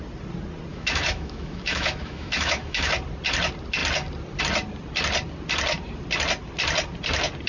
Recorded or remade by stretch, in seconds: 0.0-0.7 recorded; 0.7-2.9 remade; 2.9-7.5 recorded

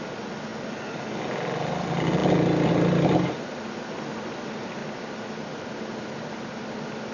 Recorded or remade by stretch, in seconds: 0.0-7.1 recorded

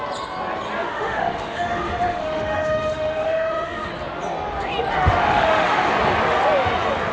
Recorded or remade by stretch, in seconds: 0.0-0.8 recorded; 0.8-3.9 remade; 3.9-4.9 recorded; 4.9-5.9 remade; 5.9-7.1 recorded

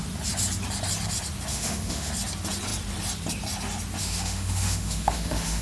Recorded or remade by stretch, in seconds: 0.0-1.5 recorded; 1.5-2.1 remade; 2.1-4.0 recorded; 4.0-5.6 remade